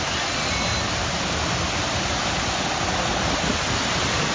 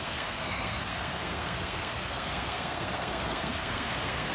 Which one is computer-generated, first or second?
second